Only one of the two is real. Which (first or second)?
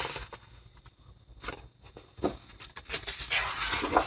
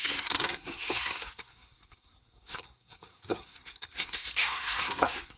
first